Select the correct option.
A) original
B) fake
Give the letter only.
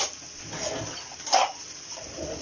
A